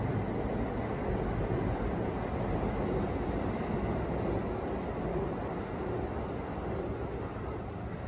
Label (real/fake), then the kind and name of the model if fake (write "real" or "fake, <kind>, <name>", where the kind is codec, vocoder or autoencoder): real